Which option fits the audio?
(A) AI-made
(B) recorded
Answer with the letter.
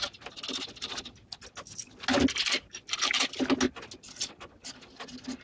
B